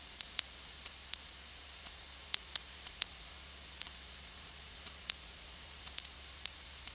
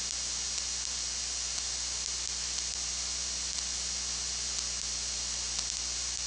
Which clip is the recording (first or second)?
second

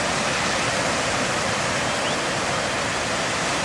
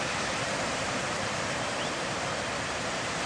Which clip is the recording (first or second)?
first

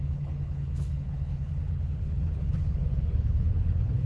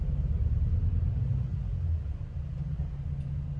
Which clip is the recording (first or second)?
second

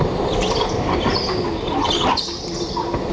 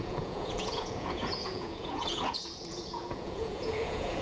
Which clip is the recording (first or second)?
first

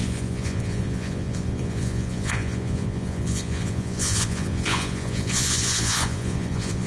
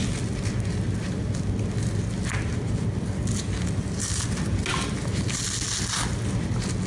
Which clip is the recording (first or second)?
second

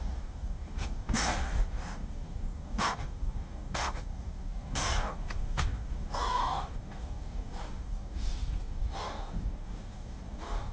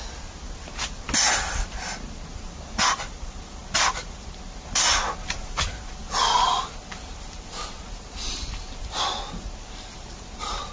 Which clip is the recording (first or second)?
second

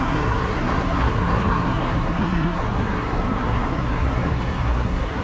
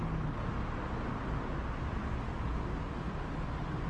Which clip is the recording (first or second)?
second